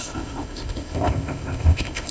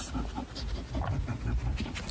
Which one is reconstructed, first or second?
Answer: first